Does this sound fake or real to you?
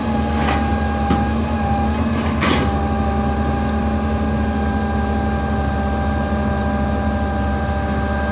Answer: real